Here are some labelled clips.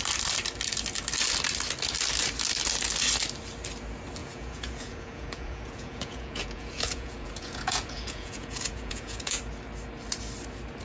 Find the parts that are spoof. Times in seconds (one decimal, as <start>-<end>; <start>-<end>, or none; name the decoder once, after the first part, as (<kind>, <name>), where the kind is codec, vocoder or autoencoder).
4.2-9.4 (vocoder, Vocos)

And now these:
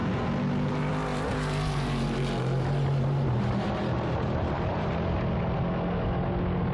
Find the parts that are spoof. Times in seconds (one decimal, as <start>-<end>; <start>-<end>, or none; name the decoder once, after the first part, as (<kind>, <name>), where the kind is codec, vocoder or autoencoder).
1.1-5.1 (vocoder, BigVGAN v2)

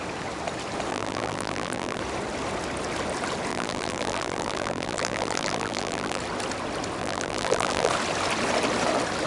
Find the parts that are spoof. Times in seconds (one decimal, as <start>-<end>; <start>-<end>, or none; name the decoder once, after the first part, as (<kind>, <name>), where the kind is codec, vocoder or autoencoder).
0.9-2.0 (vocoder, BigVGAN v2); 3.5-6.2; 7.0-7.9